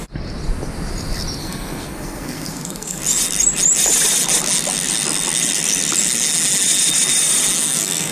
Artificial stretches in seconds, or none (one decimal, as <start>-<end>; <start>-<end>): 1.4-3.0; 7.6-8.1